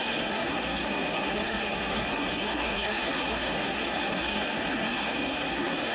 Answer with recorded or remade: remade